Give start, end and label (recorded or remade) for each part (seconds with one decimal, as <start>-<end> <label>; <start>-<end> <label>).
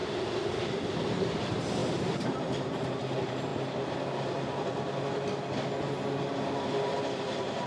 0.0-3.5 remade; 3.5-7.2 recorded; 7.2-7.7 remade